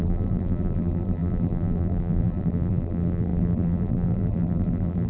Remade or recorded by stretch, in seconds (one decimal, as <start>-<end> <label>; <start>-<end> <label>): 0.0-5.1 remade